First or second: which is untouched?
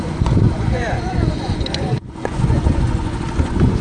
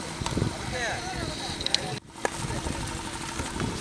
second